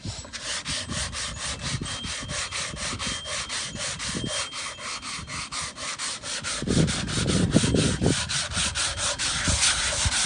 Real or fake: real